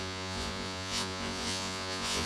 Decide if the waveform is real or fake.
fake